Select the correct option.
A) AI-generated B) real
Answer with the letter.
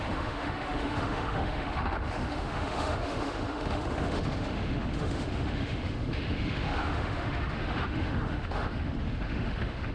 A